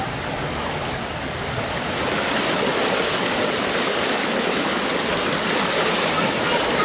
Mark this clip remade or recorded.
recorded